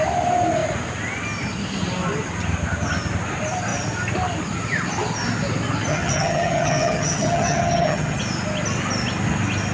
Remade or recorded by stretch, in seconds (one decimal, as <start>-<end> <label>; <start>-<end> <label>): 0.0-5.9 recorded; 5.9-8.2 remade; 8.2-9.7 recorded